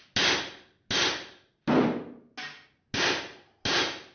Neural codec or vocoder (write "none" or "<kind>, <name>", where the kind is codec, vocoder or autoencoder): none